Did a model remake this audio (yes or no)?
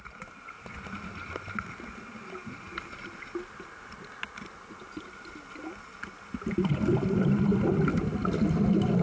no